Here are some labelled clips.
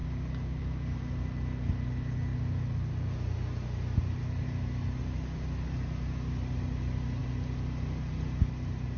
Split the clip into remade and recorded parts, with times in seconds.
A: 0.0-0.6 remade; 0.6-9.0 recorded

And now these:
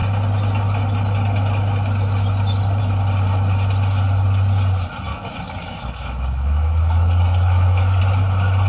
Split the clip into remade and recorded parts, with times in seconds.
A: 0.0-5.1 recorded; 5.1-8.0 remade; 8.0-8.7 recorded